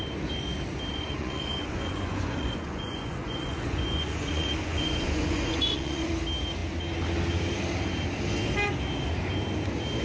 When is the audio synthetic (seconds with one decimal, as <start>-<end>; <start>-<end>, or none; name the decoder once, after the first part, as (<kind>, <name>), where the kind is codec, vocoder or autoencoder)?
0.9-6.1 (vocoder, Vocos)